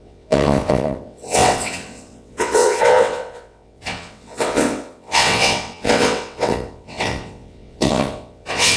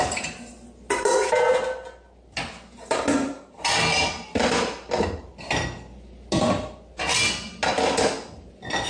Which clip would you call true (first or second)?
second